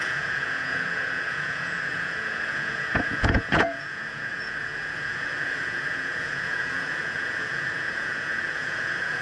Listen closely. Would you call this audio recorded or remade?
remade